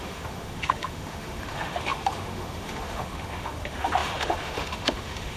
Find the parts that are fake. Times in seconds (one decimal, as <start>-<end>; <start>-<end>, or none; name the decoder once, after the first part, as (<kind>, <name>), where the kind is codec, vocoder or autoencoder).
0.0-5.4 (autoencoder, DAC-VAE)